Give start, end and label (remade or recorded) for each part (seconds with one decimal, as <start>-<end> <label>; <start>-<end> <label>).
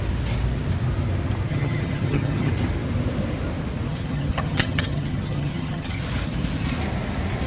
0.0-1.5 recorded; 1.5-2.5 remade; 2.5-3.9 recorded; 3.9-6.0 remade; 6.0-7.5 recorded